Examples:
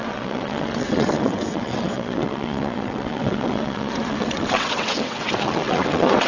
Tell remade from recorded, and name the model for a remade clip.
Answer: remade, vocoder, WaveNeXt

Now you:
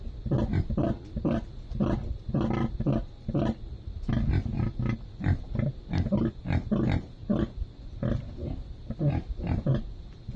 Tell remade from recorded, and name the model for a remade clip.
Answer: recorded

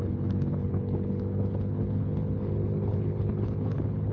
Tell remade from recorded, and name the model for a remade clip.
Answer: remade, codec, HILCodec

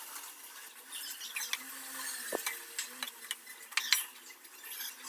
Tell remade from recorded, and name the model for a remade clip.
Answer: recorded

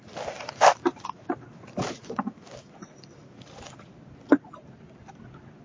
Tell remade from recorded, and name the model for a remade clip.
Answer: recorded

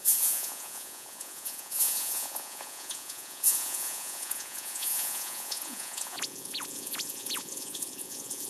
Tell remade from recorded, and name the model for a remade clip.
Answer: remade, vocoder, Vocos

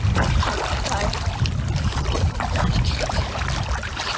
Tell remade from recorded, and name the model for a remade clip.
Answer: recorded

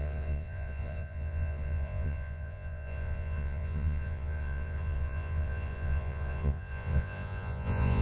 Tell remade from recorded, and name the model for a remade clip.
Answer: remade, vocoder, Vocos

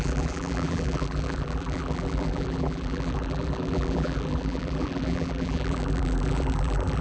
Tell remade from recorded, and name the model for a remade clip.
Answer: remade, vocoder, BigVGAN v2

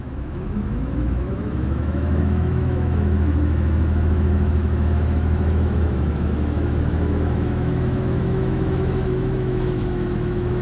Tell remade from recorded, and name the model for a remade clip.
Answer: remade, autoencoder, DAC-VAE